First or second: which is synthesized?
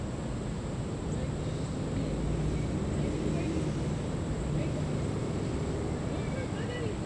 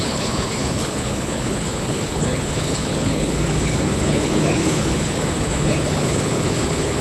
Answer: second